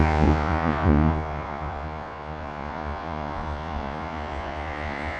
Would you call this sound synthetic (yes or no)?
yes